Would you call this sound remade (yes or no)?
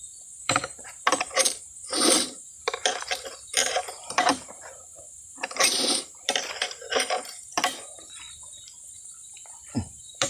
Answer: yes